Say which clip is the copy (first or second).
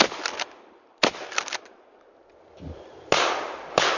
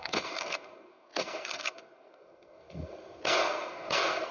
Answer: second